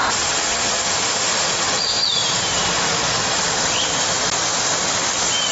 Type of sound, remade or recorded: recorded